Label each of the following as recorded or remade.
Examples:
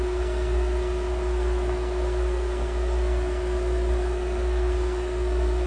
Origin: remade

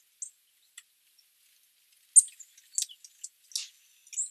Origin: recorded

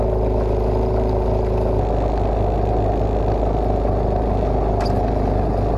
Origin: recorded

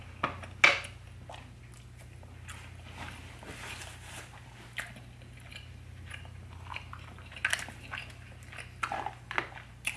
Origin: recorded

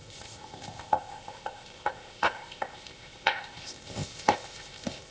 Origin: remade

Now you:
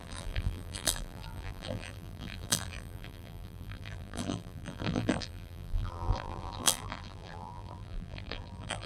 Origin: remade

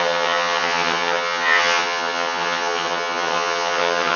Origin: remade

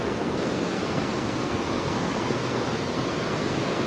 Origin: remade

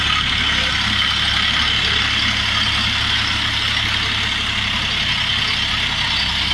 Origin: recorded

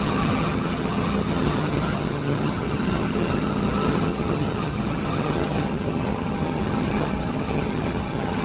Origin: remade